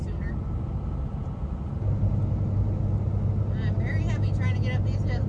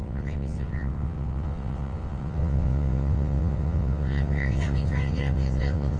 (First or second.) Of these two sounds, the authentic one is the first